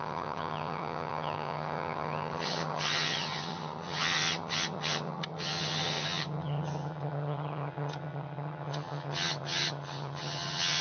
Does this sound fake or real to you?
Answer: fake